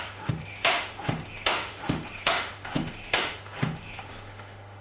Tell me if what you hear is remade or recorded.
remade